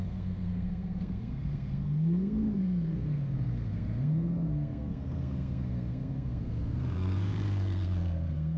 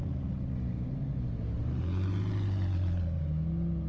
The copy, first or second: first